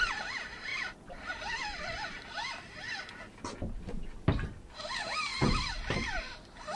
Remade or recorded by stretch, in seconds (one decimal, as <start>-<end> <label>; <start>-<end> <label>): 0.0-0.7 remade; 0.7-1.8 recorded; 1.8-6.8 remade

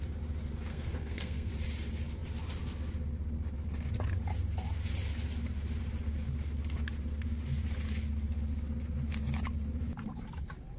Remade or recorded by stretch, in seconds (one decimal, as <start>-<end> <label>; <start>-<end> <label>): 0.0-0.7 recorded; 0.7-1.5 remade; 1.5-10.8 recorded

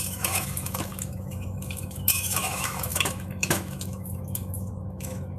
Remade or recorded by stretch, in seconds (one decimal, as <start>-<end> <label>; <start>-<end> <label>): 0.0-5.4 remade